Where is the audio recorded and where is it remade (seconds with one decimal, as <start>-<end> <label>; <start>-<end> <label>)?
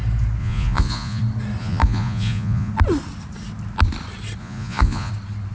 0.0-0.4 recorded; 0.4-1.2 remade; 1.2-1.6 recorded; 1.6-2.7 remade; 2.7-4.4 recorded; 4.4-5.1 remade; 5.1-5.5 recorded